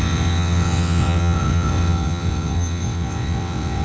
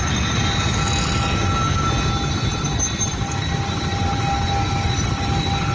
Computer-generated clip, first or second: first